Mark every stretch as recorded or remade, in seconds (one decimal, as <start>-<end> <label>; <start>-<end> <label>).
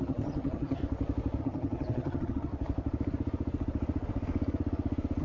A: 0.0-0.8 remade; 0.8-1.4 recorded; 1.4-2.5 remade; 2.5-5.2 recorded